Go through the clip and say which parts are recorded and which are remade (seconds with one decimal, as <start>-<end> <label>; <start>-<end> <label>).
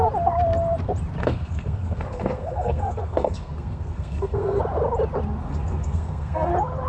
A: 0.0-1.2 recorded; 1.2-4.6 remade; 4.6-5.4 recorded; 5.4-6.5 remade; 6.5-6.9 recorded